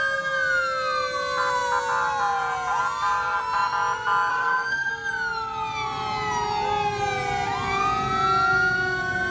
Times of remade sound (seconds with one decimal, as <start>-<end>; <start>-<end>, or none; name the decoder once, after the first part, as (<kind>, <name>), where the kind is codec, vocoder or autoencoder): 4.3-4.9 (codec, SNAC)